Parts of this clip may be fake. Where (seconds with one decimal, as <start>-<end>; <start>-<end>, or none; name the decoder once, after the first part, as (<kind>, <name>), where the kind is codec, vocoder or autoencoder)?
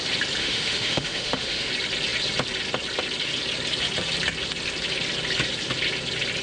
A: 0.4-1.7 (autoencoder, DAC-VAE)